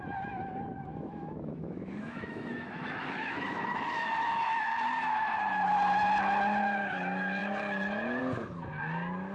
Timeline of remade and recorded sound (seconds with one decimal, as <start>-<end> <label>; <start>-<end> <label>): 0.0-0.9 recorded; 0.9-4.7 remade; 4.7-9.3 recorded